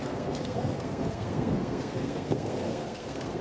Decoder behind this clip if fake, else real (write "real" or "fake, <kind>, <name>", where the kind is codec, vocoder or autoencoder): fake, codec, SNAC